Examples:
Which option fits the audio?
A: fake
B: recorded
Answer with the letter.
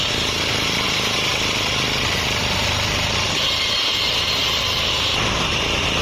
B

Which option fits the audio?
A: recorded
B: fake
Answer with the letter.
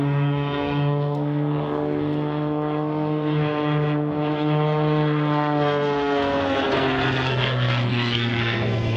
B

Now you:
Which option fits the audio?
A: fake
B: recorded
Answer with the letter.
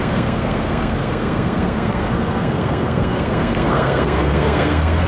A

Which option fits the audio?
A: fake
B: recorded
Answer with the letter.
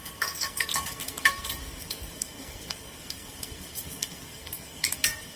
A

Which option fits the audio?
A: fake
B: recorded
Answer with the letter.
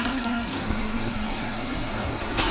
A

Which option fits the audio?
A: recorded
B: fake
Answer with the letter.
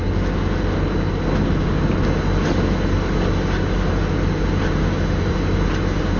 A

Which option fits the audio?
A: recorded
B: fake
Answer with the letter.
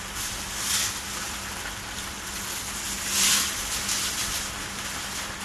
A